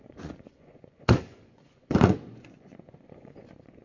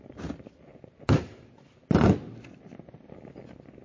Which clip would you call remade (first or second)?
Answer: first